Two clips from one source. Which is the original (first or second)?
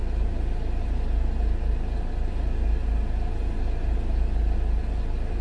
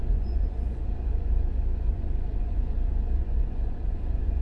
first